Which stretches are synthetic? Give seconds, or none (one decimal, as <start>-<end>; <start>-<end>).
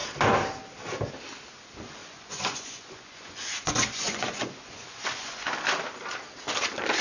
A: 2.0-5.5